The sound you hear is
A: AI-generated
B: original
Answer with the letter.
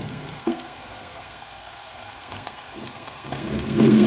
A